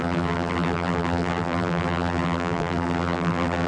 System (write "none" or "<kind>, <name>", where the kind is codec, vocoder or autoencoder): vocoder, BigVGAN v2